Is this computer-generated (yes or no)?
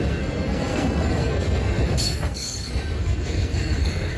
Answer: yes